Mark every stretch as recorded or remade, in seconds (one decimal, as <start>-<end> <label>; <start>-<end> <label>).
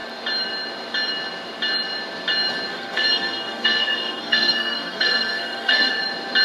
0.0-2.7 recorded; 2.7-5.9 remade; 5.9-6.4 recorded